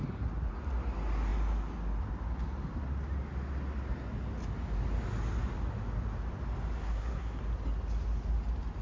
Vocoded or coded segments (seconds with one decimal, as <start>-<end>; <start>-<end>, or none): 6.8-7.4